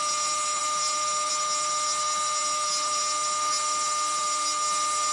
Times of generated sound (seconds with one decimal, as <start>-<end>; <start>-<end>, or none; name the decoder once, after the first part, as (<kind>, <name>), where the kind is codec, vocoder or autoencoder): none